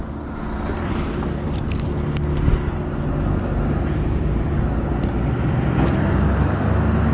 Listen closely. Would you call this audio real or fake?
real